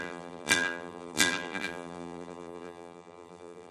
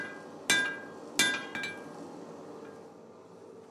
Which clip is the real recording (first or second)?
second